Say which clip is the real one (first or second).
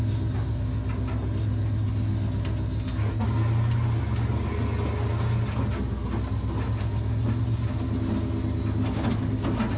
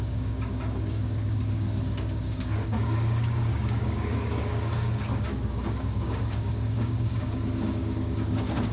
first